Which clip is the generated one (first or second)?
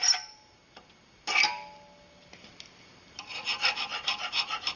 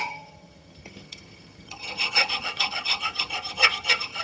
second